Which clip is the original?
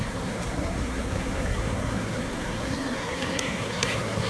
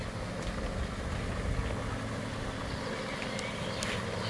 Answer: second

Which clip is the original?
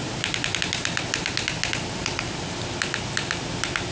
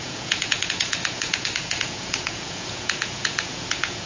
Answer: first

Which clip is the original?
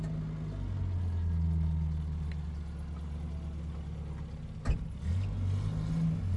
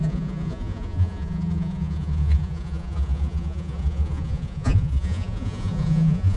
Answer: first